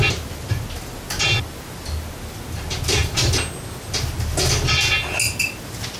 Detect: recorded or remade recorded